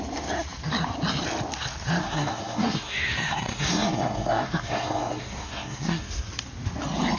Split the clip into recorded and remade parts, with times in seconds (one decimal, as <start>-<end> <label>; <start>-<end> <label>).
0.0-2.0 recorded; 2.0-6.3 remade; 6.3-7.2 recorded

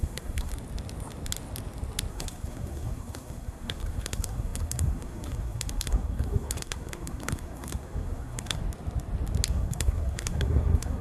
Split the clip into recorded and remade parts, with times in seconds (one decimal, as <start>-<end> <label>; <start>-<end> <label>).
0.0-0.5 remade; 0.5-2.1 recorded; 2.1-8.6 remade; 8.6-9.5 recorded; 9.5-11.0 remade

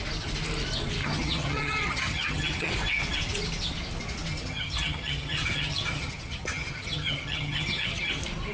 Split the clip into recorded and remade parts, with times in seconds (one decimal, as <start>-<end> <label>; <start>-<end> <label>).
0.0-1.0 recorded; 1.0-2.7 remade; 2.7-4.3 recorded; 4.3-8.1 remade; 8.1-8.5 recorded

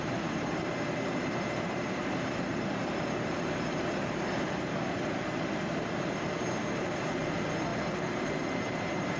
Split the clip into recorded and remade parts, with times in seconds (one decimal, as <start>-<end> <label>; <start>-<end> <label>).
0.0-9.2 remade

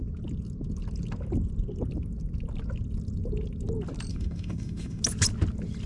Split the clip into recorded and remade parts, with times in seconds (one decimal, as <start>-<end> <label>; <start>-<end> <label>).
0.0-4.1 recorded; 4.1-5.0 remade; 5.0-5.9 recorded